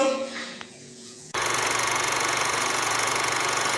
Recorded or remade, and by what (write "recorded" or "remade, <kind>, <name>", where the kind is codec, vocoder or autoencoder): remade, vocoder, Vocos